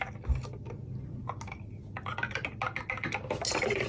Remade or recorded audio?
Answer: recorded